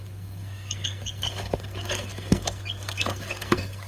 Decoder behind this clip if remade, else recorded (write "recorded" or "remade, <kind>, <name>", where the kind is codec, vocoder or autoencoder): remade, codec, SNAC